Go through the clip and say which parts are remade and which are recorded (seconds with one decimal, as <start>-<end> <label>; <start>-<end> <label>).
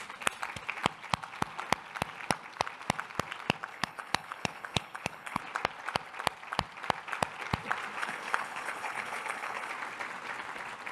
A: 0.0-3.7 recorded; 3.7-5.4 remade; 5.4-8.0 recorded; 8.0-9.7 remade; 9.7-10.9 recorded